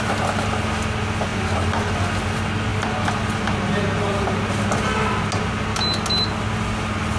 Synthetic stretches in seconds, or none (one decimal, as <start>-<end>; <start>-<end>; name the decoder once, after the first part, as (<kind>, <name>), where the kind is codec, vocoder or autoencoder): none